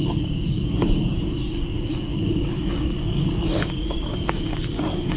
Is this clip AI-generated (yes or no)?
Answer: yes